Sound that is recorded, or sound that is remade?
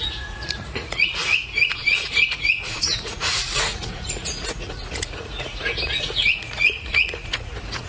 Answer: remade